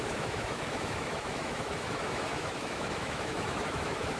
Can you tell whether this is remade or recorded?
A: remade